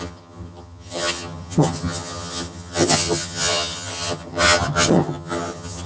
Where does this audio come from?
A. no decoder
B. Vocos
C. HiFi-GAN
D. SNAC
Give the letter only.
C